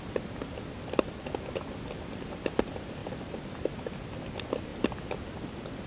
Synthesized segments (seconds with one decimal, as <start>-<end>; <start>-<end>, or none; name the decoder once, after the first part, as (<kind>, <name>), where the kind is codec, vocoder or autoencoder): none